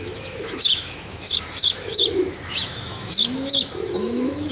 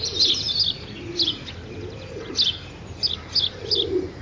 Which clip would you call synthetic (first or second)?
first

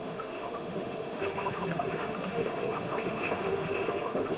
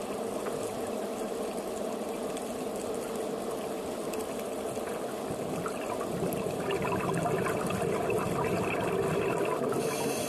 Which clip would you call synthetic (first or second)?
first